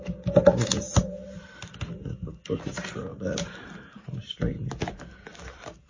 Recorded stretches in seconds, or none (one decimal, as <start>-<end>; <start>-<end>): 0.0-5.9

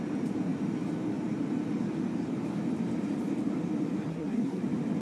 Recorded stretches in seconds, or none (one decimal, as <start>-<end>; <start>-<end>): 0.0-4.1; 4.6-5.0